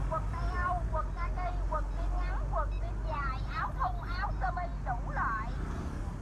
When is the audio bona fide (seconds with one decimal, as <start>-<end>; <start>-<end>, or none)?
0.0-6.2